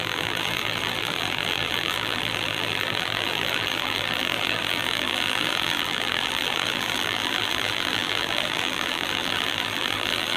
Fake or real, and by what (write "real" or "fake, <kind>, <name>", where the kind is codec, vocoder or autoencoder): fake, vocoder, BigVGAN v2